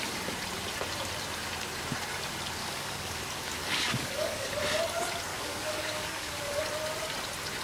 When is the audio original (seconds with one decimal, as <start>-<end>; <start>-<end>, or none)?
0.0-2.6; 3.2-3.6; 4.5-5.3; 6.6-7.6